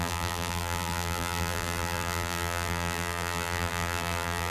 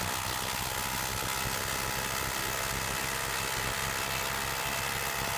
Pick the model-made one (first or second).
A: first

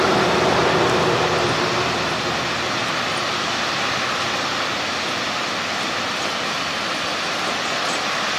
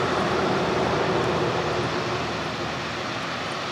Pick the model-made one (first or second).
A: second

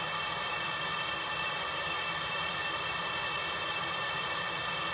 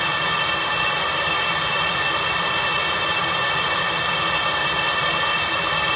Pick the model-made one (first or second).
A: first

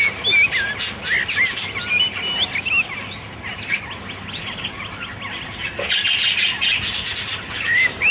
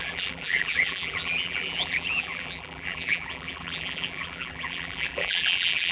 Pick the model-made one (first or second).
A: second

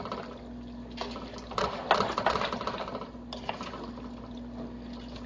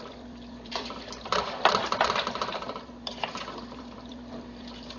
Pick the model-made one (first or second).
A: second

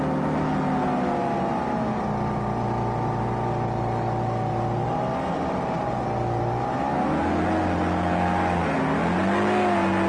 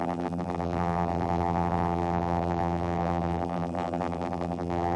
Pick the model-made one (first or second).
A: second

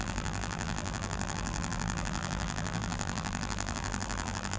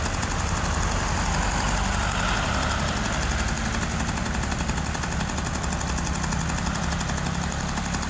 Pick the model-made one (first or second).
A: first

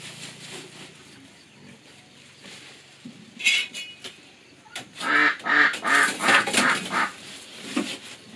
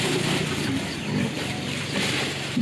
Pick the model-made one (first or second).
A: second